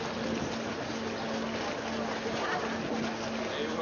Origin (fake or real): real